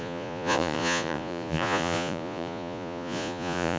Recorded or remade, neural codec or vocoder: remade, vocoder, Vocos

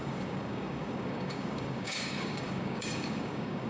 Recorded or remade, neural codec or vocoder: remade, codec, DAC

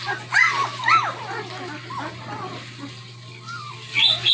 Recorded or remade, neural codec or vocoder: recorded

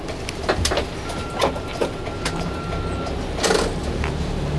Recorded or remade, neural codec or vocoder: recorded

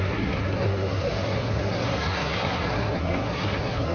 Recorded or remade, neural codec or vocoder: remade, codec, SNAC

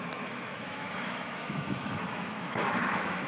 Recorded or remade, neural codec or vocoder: remade, autoencoder, DAC-VAE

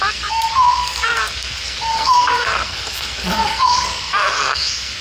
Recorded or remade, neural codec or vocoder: remade, codec, SNAC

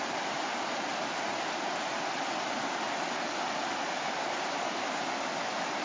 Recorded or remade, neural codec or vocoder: recorded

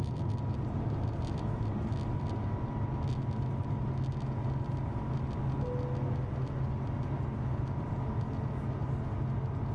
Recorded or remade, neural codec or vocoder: recorded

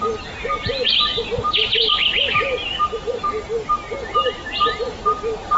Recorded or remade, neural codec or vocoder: recorded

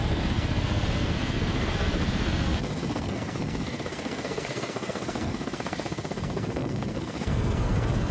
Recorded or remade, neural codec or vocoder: remade, codec, SNAC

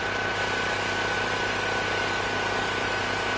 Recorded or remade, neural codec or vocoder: recorded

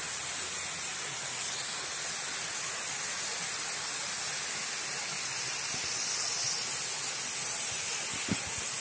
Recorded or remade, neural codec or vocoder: recorded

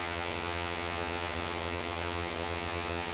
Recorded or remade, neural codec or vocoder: remade, vocoder, HiFi-GAN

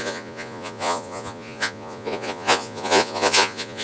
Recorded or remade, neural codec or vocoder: remade, vocoder, Vocos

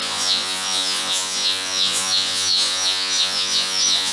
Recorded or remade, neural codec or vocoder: remade, vocoder, Vocos